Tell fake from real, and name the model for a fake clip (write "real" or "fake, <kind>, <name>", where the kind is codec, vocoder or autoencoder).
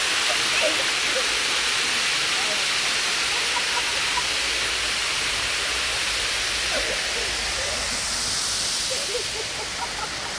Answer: real